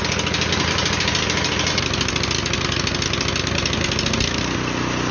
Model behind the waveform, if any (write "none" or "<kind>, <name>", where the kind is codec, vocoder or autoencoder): none